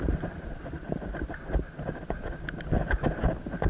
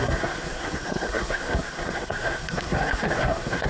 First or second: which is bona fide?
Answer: first